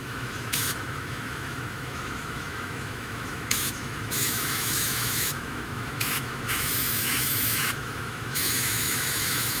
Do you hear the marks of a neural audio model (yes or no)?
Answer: yes